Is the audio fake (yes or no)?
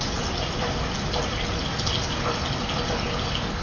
no